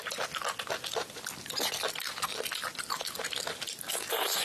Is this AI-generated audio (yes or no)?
no